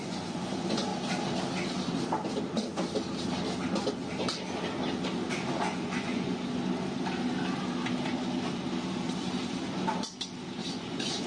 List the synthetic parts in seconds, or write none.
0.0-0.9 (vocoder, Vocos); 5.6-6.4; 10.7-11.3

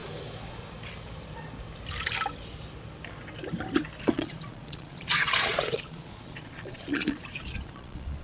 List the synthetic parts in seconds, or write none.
4.0-8.2 (vocoder, Vocos)

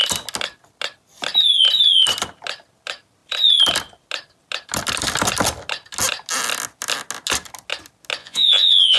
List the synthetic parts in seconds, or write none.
8.2-9.0 (vocoder, Vocos)

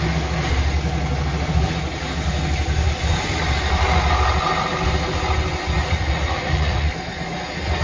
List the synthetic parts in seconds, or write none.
5.8-6.9 (vocoder, Vocos)

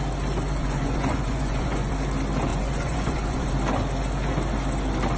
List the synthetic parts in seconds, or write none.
0.6-1.9 (vocoder, Vocos); 2.5-3.5